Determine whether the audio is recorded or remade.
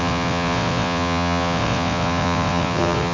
remade